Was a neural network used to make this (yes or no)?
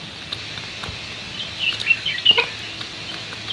no